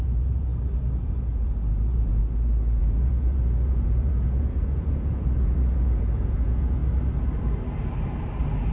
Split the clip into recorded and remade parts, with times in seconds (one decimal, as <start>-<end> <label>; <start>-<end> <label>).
0.0-0.5 remade; 0.5-1.0 recorded; 1.0-2.2 remade; 2.2-2.8 recorded; 2.8-6.8 remade; 6.8-8.7 recorded